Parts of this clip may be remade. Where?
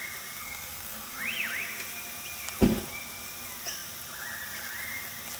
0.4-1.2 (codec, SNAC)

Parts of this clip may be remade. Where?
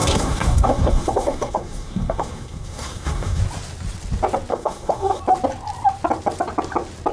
0.0-3.4 (codec, SNAC); 4.5-5.2